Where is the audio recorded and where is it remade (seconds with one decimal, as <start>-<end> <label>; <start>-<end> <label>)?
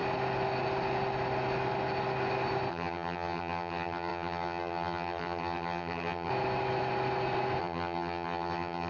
0.0-2.7 recorded; 2.7-6.3 remade; 6.3-7.6 recorded; 7.6-8.9 remade